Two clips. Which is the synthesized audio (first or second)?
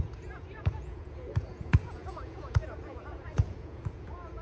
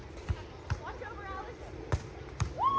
first